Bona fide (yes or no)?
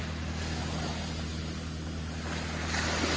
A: yes